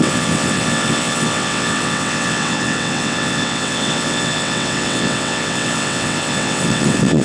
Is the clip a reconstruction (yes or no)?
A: yes